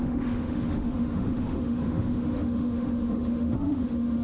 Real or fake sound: fake